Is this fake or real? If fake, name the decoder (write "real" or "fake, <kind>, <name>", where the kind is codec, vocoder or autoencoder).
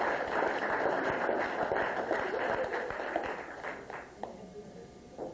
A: real